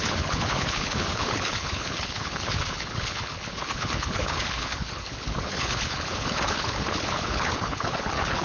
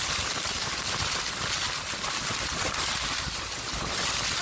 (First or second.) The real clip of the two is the second